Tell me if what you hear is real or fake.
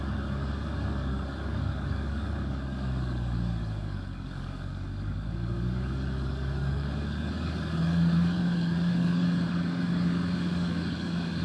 fake